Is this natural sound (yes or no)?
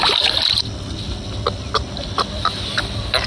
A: yes